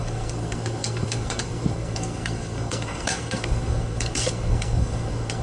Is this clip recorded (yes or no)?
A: no